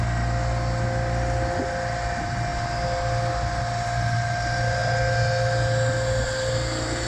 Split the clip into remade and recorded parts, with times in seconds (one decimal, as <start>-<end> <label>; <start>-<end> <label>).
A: 0.0-7.1 recorded